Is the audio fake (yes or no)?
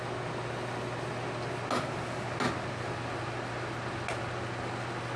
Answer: no